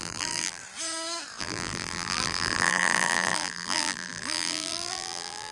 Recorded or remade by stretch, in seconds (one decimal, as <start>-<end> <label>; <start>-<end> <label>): 0.0-0.6 remade; 0.6-1.4 recorded; 1.4-5.5 remade